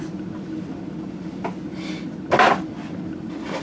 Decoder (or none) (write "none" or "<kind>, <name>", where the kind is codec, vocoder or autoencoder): none